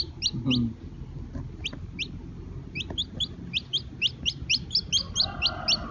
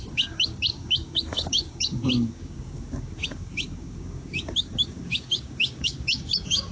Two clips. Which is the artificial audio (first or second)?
second